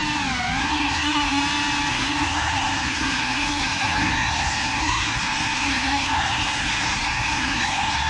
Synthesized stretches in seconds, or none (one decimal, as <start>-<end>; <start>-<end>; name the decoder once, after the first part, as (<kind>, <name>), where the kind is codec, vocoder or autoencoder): 0.6-1.4 (codec, SNAC); 1.9-8.1